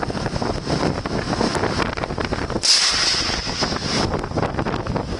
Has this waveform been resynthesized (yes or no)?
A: no